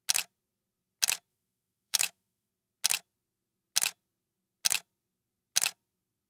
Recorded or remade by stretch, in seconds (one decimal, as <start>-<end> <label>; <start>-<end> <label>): 0.0-1.3 recorded; 1.3-2.5 remade; 2.5-6.3 recorded